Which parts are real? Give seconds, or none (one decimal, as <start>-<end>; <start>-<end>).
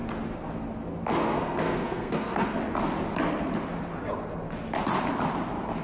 0.0-1.1; 2.6-5.8